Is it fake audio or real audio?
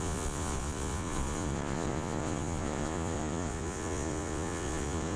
fake